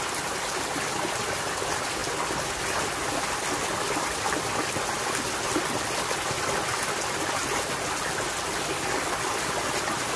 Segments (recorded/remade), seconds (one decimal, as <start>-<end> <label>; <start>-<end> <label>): 0.0-10.2 recorded

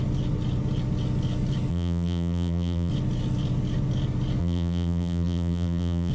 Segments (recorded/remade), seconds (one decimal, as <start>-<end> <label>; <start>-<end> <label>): 0.0-1.7 recorded; 1.7-2.9 remade; 2.9-4.4 recorded; 4.4-6.1 remade

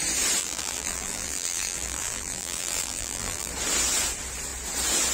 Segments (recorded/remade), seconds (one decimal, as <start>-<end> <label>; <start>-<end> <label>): 0.0-0.4 recorded; 0.4-3.5 remade; 3.5-5.1 recorded

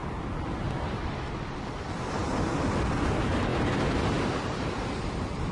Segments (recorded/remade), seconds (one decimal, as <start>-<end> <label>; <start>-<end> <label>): 0.0-0.8 recorded; 0.8-2.2 remade; 2.2-4.0 recorded; 4.0-5.5 remade

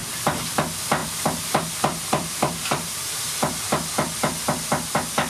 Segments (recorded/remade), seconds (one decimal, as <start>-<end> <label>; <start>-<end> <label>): 0.0-1.0 recorded; 1.0-3.2 remade; 3.2-5.3 recorded

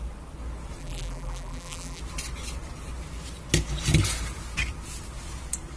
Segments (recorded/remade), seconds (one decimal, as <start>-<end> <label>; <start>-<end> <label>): 0.0-0.8 recorded; 0.8-2.0 remade; 2.0-5.8 recorded

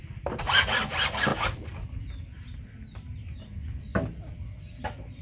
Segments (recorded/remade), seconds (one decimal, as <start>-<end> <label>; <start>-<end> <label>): 0.0-5.2 recorded

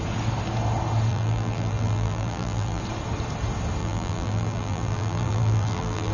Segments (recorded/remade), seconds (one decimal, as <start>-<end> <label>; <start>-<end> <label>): 0.0-1.1 recorded; 1.1-2.8 remade; 2.8-3.8 recorded; 3.8-6.1 remade